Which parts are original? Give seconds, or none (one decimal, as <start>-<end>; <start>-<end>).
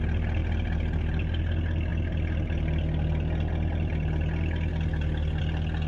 0.0-5.9